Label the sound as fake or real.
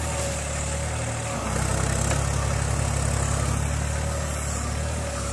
real